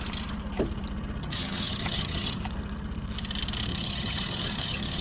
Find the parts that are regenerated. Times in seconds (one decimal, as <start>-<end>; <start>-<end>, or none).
1.2-2.4; 3.7-5.0